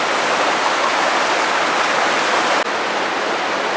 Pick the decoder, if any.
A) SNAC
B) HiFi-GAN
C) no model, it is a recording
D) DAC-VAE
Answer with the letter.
C